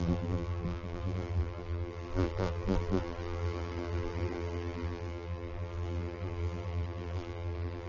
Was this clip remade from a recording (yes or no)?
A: yes